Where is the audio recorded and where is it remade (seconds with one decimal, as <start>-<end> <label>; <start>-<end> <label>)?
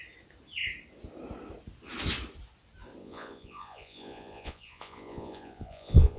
0.0-3.0 recorded; 3.0-6.2 remade